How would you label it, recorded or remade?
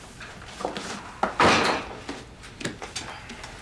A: recorded